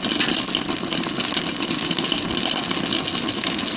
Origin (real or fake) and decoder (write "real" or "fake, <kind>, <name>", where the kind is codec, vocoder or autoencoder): real